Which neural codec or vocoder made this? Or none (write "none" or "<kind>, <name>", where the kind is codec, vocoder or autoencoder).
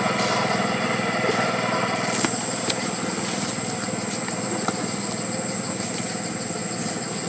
none